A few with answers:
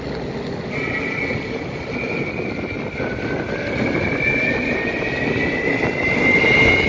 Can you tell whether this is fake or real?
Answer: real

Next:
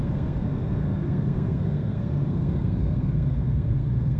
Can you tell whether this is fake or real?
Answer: fake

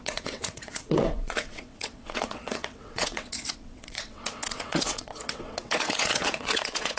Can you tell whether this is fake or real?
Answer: fake